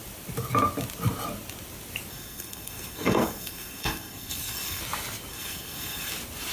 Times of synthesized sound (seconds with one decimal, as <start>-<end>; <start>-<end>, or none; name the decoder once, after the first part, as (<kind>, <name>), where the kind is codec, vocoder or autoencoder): 2.1-4.8 (codec, SNAC); 5.3-6.1